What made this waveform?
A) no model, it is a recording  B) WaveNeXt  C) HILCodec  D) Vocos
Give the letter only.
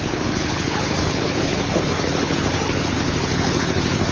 C